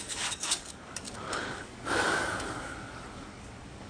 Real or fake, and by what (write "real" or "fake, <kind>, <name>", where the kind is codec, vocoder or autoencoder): fake, codec, DAC